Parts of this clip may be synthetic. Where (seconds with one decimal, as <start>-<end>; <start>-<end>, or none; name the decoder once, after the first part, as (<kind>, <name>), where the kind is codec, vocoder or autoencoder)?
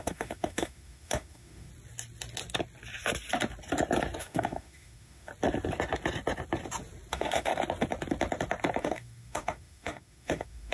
0.0-1.7 (autoencoder, DAC-VAE); 4.2-5.3; 7.1-7.5; 8.8-10.7